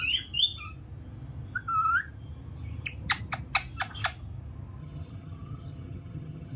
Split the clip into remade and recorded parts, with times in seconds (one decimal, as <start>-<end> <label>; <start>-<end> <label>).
0.0-4.8 recorded; 4.8-6.6 remade